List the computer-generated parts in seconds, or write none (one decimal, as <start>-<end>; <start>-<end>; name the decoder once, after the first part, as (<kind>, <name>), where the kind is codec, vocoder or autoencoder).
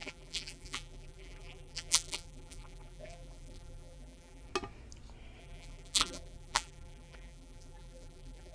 0.0-4.5 (vocoder, BigVGAN v2); 5.4-8.5